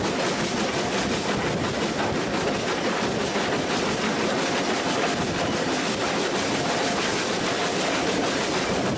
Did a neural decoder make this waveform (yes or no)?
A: no